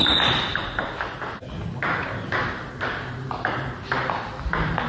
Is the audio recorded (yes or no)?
yes